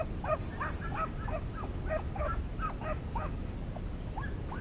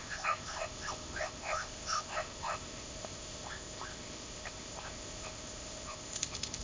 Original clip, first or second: first